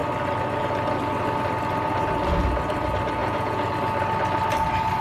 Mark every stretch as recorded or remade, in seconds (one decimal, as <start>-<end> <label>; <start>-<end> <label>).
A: 0.0-3.2 recorded; 3.2-3.7 remade; 3.7-5.0 recorded